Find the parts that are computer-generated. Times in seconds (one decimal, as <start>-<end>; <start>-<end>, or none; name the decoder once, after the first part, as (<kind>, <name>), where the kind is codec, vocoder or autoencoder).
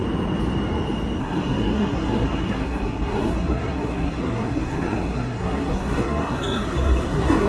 1.2-7.5 (codec, SNAC)